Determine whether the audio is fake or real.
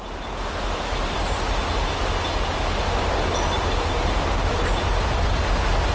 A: real